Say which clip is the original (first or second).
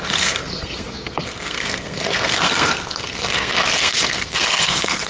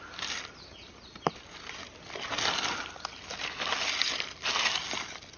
second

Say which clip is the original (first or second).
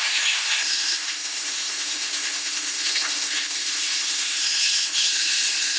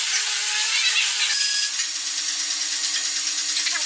second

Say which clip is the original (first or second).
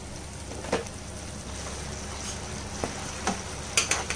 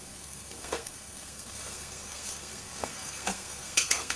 first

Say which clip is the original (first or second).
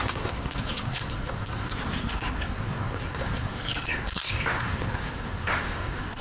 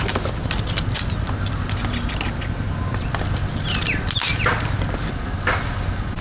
second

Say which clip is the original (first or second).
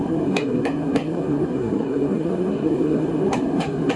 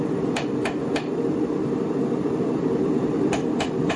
second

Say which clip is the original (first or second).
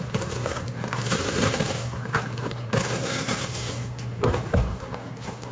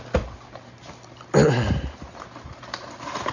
second